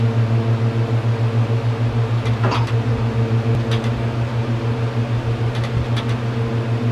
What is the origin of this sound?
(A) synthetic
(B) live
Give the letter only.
B